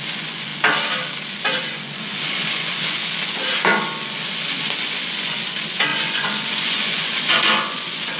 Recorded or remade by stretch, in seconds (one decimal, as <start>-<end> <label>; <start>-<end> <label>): 0.0-0.5 remade; 0.5-1.3 recorded; 1.3-8.2 remade